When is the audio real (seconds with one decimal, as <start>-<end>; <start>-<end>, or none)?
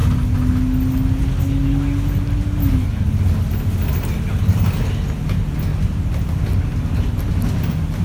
0.0-8.0